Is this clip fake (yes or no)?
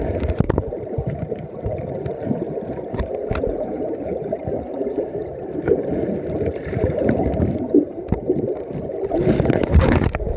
yes